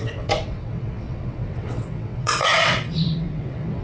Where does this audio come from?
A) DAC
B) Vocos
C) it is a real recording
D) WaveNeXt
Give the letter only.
D